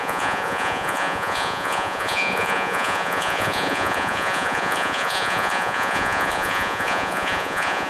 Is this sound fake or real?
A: fake